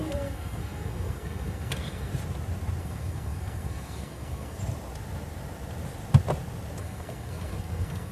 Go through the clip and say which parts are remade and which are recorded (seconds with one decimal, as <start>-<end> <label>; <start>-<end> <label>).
0.0-2.1 remade; 2.1-2.8 recorded; 2.8-4.6 remade; 4.6-6.8 recorded; 6.8-8.1 remade